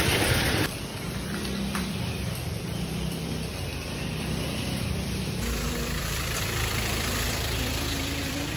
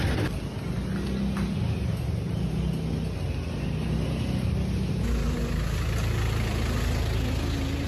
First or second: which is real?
second